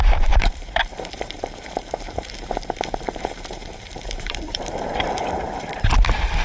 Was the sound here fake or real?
fake